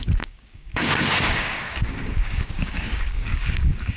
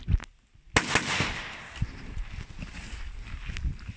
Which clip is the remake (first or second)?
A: first